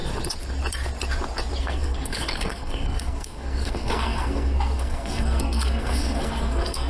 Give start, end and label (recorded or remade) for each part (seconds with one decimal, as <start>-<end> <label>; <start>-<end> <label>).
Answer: 0.0-1.6 recorded; 1.6-6.9 remade